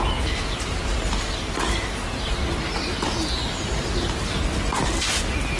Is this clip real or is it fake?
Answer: real